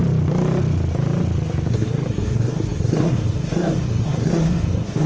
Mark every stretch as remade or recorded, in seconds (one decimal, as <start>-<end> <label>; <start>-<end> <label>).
0.0-1.7 recorded; 1.7-5.1 remade